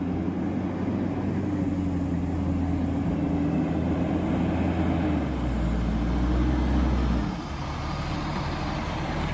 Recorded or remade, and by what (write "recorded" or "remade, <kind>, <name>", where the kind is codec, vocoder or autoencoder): recorded